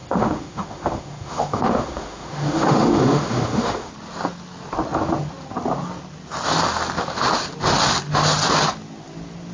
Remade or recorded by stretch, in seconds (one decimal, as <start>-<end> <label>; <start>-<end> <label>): 0.0-3.9 remade; 3.9-9.5 recorded